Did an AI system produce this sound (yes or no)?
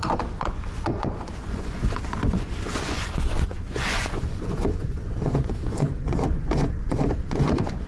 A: yes